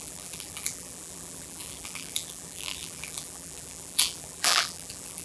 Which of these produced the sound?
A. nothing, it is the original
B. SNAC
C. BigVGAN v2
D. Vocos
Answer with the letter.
C